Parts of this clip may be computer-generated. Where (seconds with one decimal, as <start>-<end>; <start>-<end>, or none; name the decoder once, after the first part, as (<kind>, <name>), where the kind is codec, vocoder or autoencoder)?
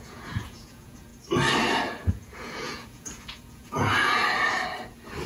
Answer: 0.0-1.1 (vocoder, Vocos); 2.1-4.2